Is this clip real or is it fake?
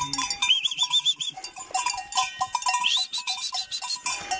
real